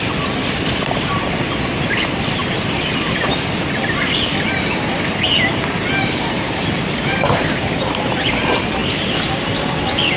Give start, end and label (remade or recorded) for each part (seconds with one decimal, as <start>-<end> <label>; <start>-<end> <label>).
0.0-10.2 recorded